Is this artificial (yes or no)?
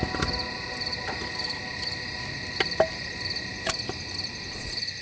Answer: no